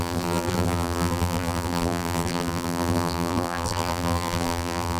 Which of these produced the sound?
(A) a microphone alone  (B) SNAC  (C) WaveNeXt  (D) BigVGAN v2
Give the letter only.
D